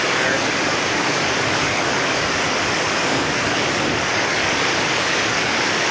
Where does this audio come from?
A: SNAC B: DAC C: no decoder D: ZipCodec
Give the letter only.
B